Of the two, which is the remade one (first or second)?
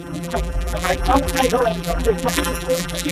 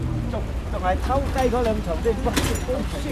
first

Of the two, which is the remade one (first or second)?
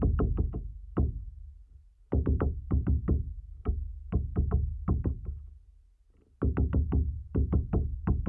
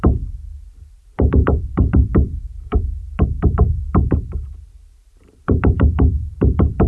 second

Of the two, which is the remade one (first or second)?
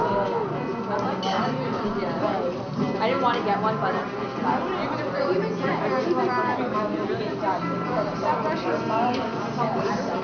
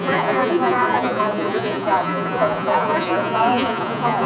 second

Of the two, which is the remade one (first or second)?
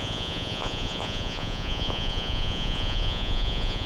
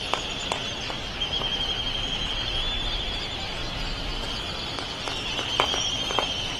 first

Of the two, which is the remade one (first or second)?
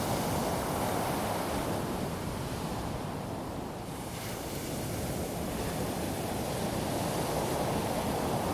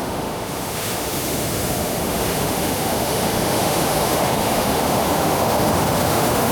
second